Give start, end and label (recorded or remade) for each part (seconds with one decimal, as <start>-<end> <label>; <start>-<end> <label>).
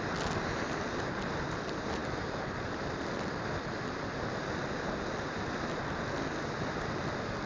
0.0-7.5 recorded